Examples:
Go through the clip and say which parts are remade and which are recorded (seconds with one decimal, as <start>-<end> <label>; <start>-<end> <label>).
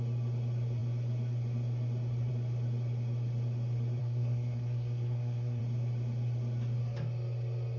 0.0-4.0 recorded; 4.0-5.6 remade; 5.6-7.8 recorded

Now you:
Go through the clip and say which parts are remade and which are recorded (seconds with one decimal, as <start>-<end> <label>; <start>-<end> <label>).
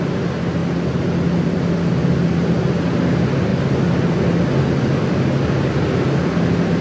0.0-6.8 recorded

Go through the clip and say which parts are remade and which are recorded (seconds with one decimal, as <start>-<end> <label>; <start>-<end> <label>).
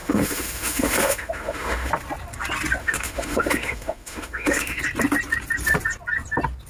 0.0-1.9 remade; 1.9-2.8 recorded; 2.8-4.8 remade; 4.8-6.7 recorded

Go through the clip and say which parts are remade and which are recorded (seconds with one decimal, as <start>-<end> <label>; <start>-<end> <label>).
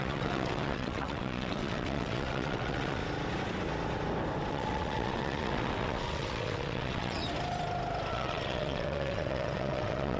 0.0-3.0 remade; 3.0-4.5 recorded; 4.5-7.2 remade; 7.2-8.1 recorded; 8.1-10.2 remade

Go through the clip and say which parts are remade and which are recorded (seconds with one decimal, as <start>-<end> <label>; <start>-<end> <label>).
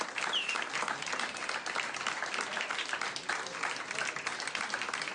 0.0-5.1 recorded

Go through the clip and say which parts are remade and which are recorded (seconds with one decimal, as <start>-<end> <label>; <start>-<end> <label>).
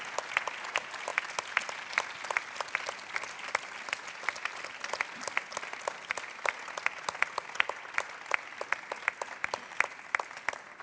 0.0-10.8 recorded